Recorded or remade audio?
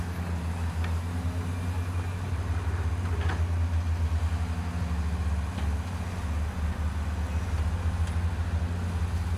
recorded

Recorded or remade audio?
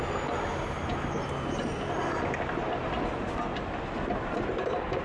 recorded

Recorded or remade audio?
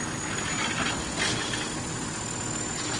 recorded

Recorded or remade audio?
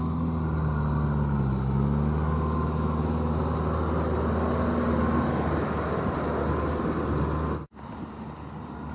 recorded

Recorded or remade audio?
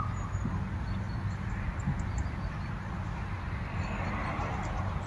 recorded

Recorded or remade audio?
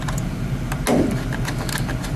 recorded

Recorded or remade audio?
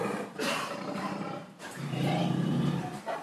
remade